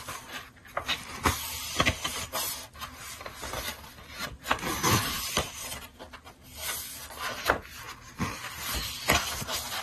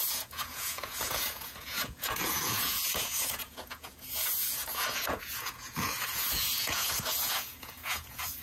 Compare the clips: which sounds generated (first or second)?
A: second